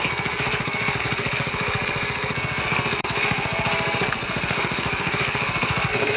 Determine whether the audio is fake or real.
fake